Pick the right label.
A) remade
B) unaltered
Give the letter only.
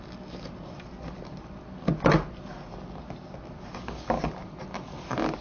B